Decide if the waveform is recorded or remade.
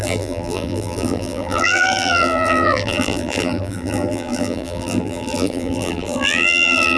remade